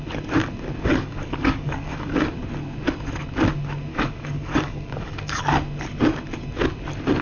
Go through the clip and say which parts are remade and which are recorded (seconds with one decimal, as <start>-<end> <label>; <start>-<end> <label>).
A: 0.0-0.9 recorded; 0.9-2.2 remade; 2.2-3.9 recorded; 3.9-5.4 remade; 5.4-7.2 recorded